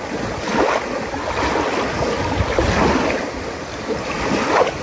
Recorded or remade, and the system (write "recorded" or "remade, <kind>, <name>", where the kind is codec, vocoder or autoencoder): recorded